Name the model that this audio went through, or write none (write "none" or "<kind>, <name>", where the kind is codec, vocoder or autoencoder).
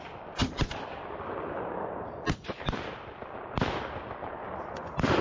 none